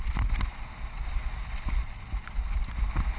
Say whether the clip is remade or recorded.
recorded